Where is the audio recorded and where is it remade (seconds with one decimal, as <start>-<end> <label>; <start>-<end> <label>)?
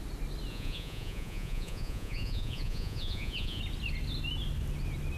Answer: 0.0-0.5 recorded; 0.5-3.6 remade; 3.6-5.2 recorded